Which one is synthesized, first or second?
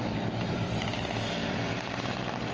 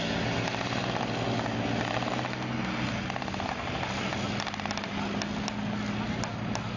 first